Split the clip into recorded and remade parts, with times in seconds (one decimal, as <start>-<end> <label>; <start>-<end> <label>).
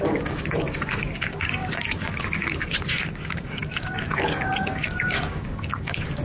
0.0-6.2 remade